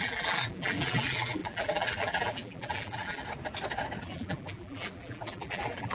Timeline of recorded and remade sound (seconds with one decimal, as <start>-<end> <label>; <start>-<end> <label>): 0.0-3.2 remade; 3.2-4.0 recorded; 4.0-5.9 remade